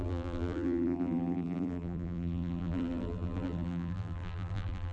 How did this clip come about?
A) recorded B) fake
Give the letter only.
B